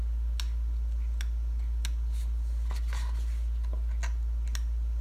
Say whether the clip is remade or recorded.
recorded